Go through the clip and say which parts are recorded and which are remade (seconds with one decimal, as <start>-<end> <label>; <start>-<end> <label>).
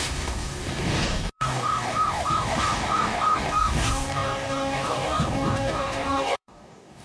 0.0-7.0 remade